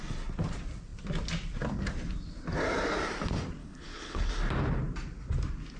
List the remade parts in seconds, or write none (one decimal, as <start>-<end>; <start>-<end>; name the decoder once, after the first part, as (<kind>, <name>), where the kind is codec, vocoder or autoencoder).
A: 3.6-4.3 (codec, HILCodec)